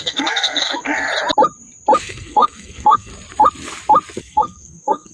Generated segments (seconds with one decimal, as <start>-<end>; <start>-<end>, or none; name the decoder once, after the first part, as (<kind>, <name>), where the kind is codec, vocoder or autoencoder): 0.0-1.1 (codec, SNAC); 2.0-3.1; 4.2-5.1